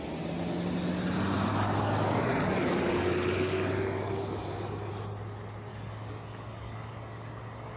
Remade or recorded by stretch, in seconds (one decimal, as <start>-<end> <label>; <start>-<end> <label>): 0.0-1.5 recorded; 1.5-4.9 remade; 4.9-5.7 recorded; 5.7-7.8 remade